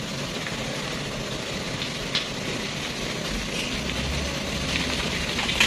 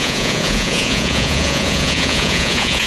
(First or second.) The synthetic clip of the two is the second